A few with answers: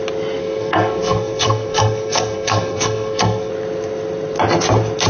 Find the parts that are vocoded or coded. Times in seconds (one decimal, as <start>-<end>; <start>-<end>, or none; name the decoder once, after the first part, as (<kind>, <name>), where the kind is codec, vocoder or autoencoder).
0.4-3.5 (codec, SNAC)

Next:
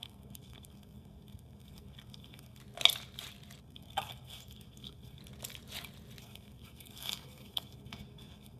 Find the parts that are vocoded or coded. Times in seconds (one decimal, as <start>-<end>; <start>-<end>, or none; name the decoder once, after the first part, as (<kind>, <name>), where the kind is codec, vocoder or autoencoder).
0.0-2.6 (codec, SNAC); 3.6-5.2; 6.2-8.6

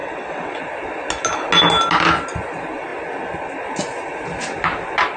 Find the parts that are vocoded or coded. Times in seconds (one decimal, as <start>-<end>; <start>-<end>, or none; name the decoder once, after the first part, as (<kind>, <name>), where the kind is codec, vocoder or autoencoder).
0.0-0.6 (vocoder, WaveNeXt)

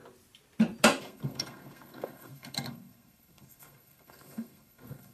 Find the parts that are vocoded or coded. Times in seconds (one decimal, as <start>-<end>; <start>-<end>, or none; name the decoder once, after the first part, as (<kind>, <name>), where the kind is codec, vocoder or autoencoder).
1.0-5.1 (codec, SNAC)

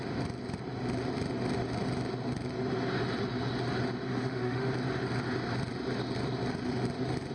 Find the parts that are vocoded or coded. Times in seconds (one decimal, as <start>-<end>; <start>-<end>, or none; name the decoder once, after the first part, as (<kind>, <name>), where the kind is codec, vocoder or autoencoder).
4.1-4.7 (autoencoder, DAC-VAE)

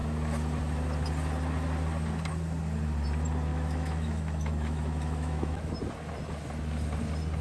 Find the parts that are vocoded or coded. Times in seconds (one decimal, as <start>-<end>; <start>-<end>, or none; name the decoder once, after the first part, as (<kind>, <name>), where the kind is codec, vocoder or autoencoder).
3.5-5.7 (autoencoder, DAC-VAE)

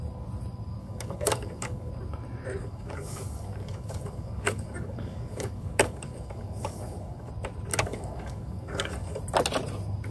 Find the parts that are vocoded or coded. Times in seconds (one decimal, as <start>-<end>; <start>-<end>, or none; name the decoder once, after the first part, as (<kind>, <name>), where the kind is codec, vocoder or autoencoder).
0.8-1.9 (codec, DAC); 2.6-7.3; 7.7-9.2

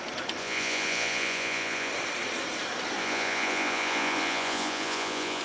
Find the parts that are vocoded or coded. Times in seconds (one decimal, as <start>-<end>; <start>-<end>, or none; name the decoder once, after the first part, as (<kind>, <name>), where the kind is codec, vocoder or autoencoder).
0.4-1.9 (vocoder, Vocos); 3.0-5.4